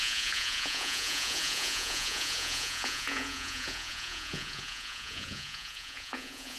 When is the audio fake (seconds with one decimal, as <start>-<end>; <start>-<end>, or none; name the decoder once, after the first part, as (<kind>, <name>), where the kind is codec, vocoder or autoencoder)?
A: 0.0-6.6 (vocoder, Vocos)